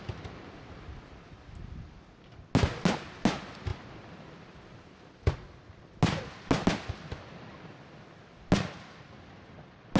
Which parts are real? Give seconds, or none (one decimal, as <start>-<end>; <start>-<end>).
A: 0.0-10.0